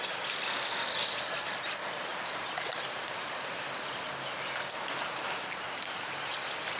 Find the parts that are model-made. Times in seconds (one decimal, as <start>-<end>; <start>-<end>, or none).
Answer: 2.1-3.6